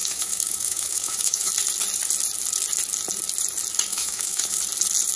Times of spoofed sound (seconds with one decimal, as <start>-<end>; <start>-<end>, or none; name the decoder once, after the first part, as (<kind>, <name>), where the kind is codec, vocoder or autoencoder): 0.0-1.5 (autoencoder, DAC-VAE); 3.9-4.6